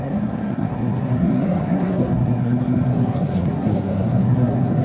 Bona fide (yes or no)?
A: no